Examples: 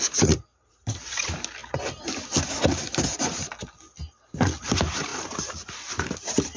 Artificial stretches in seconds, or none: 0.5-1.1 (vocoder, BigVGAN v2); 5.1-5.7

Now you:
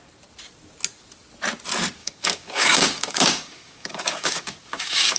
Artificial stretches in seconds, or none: 2.0-5.2 (codec, DAC)

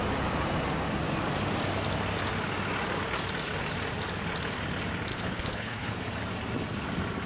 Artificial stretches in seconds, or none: 5.1-5.9 (codec, HILCodec)

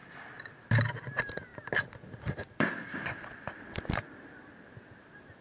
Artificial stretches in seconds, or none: 0.9-5.4 (vocoder, BigVGAN v2)

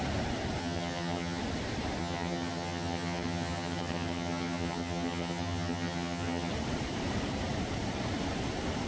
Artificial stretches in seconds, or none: 0.6-1.4 (vocoder, HiFi-GAN); 2.0-6.5

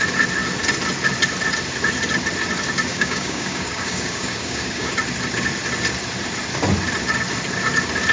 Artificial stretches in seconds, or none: 2.9-4.9 (codec, DAC)

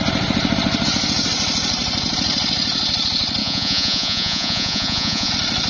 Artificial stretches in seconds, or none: 3.4-5.3 (vocoder, Vocos)